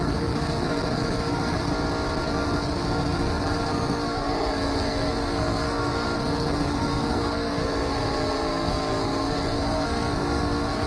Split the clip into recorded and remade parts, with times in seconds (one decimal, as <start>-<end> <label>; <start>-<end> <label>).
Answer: 0.0-1.7 remade; 1.7-2.2 recorded; 2.2-10.9 remade